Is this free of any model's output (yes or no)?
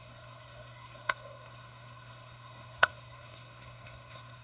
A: no